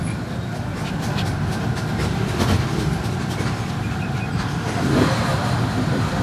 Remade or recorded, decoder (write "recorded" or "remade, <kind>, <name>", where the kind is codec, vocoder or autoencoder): remade, vocoder, BigVGAN v2